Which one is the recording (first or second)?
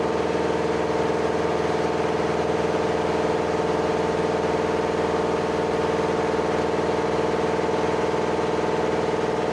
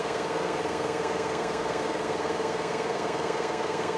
first